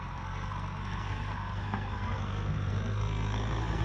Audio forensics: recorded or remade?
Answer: remade